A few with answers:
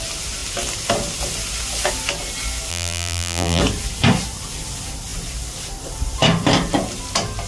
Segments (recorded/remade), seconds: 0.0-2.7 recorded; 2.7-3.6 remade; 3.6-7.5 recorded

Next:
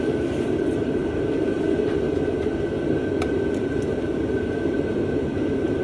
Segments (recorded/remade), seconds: 0.0-1.0 remade; 1.0-4.5 recorded; 4.5-5.8 remade

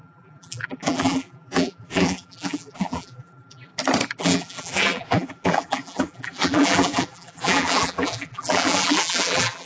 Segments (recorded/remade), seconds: 0.0-3.7 remade; 3.7-4.2 recorded; 4.2-9.7 remade

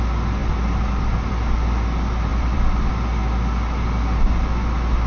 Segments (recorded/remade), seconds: 0.0-0.4 recorded; 0.4-1.3 remade; 1.3-2.3 recorded; 2.3-2.9 remade; 2.9-5.1 recorded